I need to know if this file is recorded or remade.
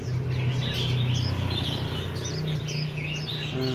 recorded